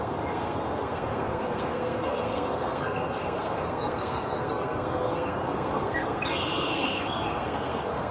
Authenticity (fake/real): fake